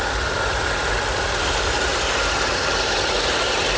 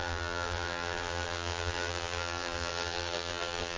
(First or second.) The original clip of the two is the first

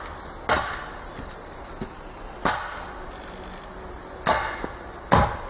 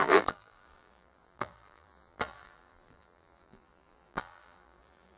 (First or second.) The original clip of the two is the first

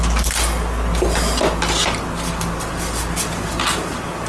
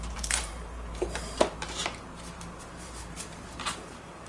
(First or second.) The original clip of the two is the first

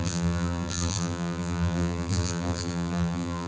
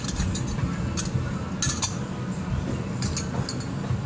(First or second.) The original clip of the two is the second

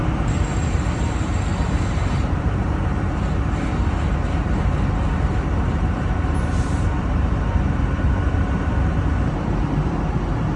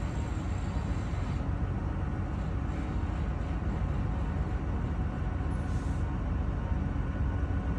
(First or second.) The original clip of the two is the second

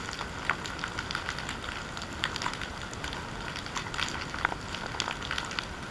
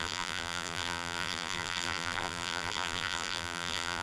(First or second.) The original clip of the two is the first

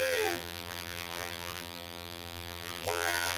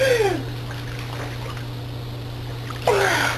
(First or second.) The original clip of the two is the second